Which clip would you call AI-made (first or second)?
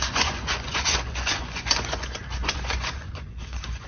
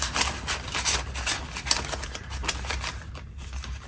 first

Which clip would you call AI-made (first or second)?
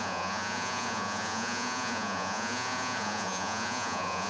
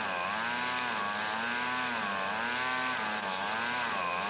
first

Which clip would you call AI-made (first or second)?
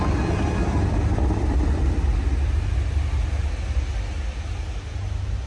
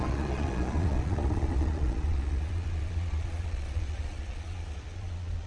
second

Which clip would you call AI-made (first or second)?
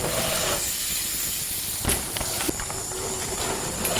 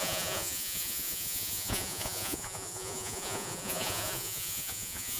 second